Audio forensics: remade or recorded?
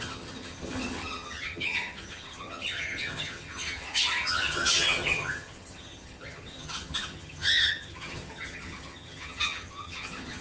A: remade